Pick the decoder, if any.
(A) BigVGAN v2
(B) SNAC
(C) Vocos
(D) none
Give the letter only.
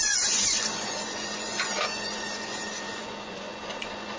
C